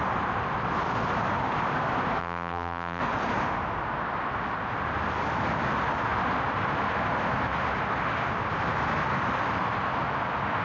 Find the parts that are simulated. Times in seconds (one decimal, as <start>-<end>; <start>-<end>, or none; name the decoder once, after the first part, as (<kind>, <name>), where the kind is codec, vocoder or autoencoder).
2.2-3.0 (vocoder, BigVGAN v2)